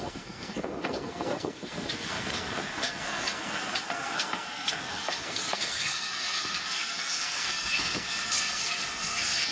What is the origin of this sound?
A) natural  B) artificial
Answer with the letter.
B